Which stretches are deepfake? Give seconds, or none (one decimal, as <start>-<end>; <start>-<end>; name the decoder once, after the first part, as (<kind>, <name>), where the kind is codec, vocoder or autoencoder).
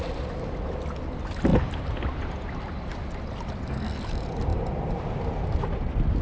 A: none